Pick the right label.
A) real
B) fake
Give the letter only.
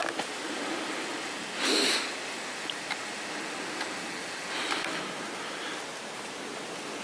A